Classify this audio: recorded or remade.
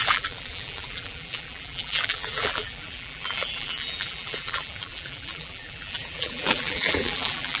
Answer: remade